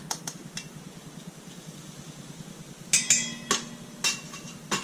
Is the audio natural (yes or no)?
yes